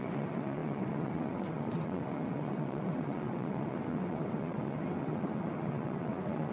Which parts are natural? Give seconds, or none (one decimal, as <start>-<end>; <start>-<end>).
none

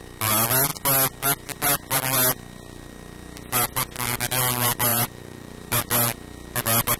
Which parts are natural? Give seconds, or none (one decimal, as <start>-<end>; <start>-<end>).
0.0-4.9; 5.8-7.0